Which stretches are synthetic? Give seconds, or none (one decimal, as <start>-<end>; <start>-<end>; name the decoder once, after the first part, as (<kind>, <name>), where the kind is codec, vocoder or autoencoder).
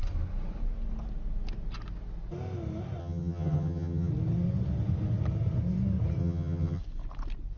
3.0-4.1 (vocoder, HiFi-GAN); 6.2-6.8